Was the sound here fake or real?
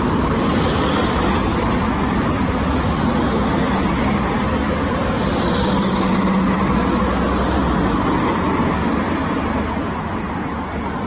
real